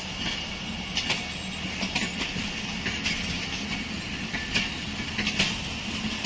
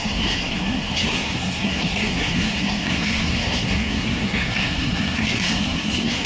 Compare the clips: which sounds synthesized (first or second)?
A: second